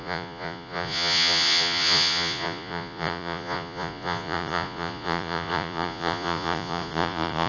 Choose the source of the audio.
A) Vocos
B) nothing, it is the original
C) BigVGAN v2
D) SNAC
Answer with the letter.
A